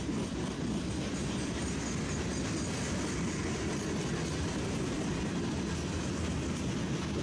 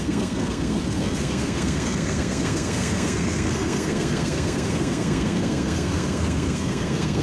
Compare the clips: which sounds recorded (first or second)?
first